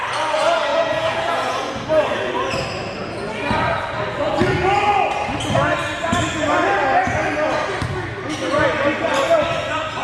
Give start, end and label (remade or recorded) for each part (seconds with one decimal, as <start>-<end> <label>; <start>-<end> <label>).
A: 0.0-0.7 recorded; 0.7-1.8 remade; 1.8-10.0 recorded